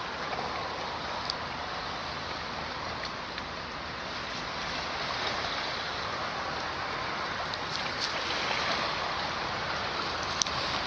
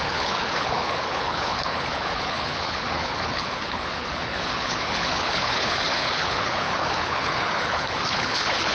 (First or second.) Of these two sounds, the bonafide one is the first